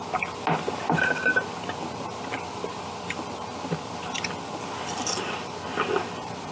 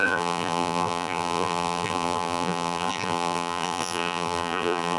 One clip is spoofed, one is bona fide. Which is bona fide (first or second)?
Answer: first